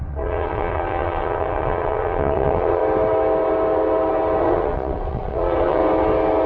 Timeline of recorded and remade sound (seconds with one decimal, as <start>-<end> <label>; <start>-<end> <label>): 0.0-2.8 remade; 2.8-4.4 recorded; 4.4-5.8 remade; 5.8-6.5 recorded